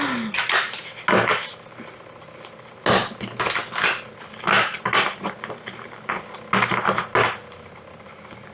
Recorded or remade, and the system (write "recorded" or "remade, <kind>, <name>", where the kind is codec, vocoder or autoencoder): recorded